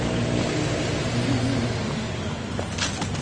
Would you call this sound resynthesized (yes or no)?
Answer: no